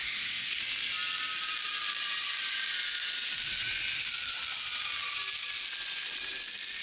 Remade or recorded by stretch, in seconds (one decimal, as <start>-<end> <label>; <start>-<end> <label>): 0.0-0.6 remade; 0.6-6.8 recorded